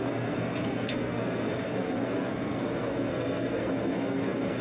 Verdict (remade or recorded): remade